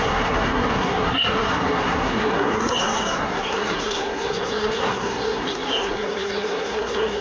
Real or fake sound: fake